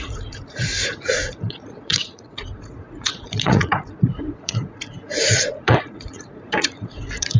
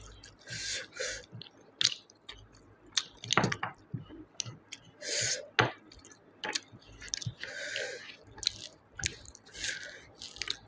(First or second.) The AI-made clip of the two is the first